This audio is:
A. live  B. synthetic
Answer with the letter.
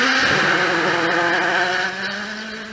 A